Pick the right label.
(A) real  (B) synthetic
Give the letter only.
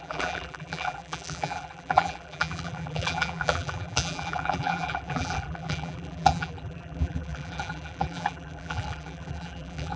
B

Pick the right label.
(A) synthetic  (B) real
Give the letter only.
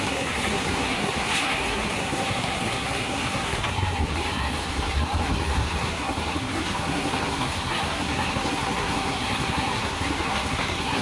A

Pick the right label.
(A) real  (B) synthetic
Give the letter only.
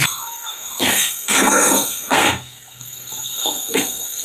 B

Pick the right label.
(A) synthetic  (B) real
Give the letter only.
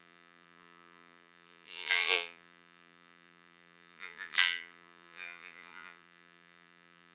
A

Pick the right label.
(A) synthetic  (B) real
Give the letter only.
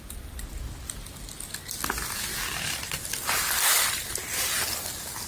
B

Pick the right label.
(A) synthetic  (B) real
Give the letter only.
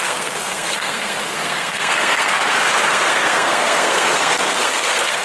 A